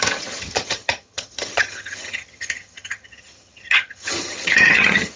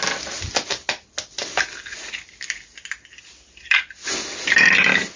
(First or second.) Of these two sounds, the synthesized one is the first